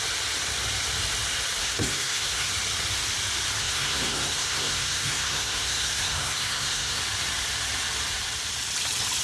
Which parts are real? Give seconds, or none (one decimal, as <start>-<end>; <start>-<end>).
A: 0.0-1.6; 2.5-3.6; 7.0-9.2